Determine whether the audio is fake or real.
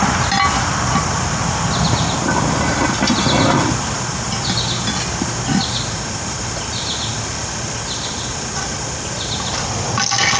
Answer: real